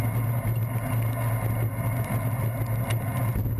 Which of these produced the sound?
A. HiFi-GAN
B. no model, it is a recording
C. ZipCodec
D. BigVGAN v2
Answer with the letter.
B